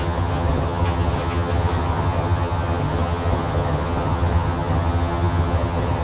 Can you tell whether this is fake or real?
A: fake